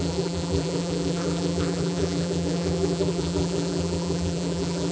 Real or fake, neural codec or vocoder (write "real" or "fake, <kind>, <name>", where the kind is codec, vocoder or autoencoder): fake, vocoder, BigVGAN v2